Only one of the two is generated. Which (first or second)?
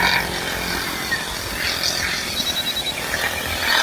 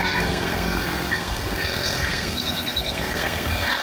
second